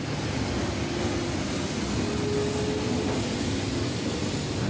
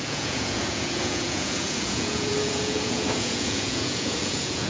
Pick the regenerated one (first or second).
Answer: second